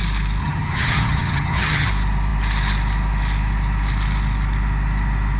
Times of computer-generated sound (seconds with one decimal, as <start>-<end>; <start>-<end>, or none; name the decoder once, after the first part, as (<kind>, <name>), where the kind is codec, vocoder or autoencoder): 0.4-1.9 (vocoder, HiFi-GAN)